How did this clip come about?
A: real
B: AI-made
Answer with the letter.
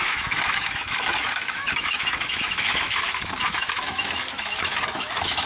B